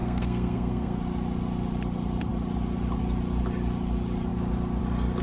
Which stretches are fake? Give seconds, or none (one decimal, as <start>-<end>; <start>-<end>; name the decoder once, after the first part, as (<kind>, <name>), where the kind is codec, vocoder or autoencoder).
0.0-1.0 (codec, SNAC)